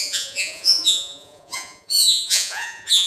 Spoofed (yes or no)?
yes